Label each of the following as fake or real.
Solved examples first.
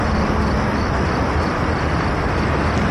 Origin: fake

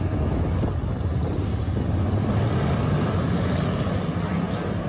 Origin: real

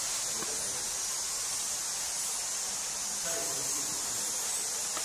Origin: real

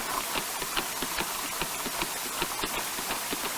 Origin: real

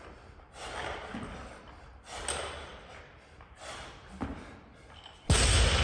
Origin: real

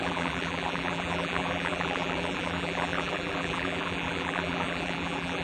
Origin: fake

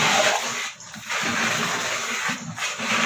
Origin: fake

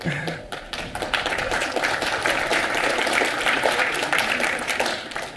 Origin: fake